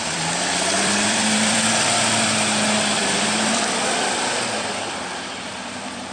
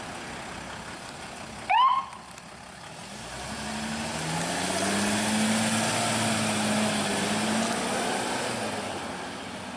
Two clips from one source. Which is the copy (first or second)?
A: first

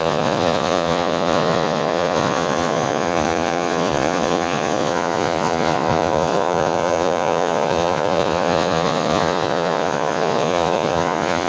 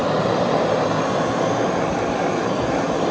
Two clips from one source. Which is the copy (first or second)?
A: first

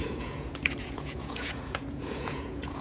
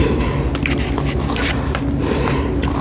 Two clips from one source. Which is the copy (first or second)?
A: first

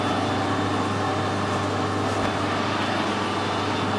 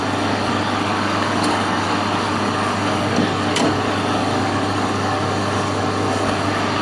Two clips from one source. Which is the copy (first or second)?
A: second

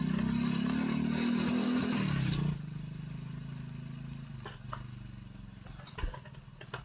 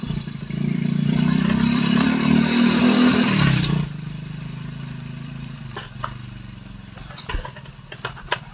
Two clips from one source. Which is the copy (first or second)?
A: second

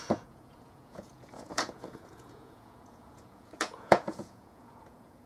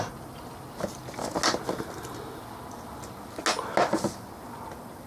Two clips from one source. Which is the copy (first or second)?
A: first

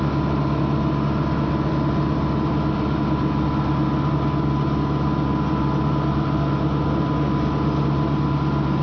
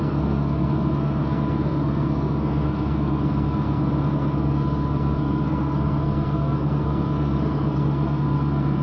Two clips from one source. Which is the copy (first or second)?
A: second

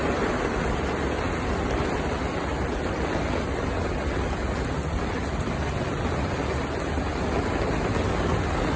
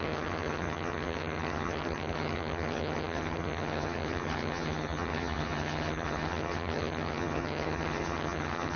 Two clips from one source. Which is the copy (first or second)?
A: second